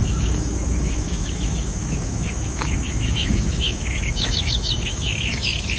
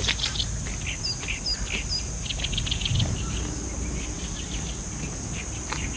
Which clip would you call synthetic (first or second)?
first